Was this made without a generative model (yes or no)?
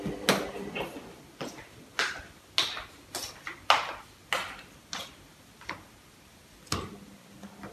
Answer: yes